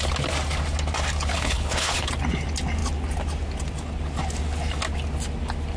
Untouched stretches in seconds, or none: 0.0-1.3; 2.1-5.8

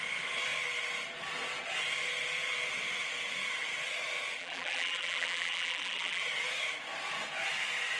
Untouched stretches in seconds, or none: 0.0-4.4; 6.2-8.0

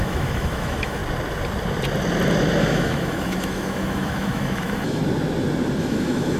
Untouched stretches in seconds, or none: 1.0-2.6; 5.0-5.8

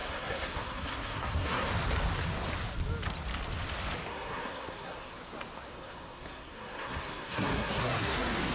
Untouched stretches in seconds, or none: 1.7-4.1; 5.2-5.7

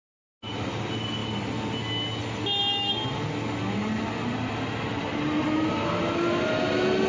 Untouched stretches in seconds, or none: 0.0-7.1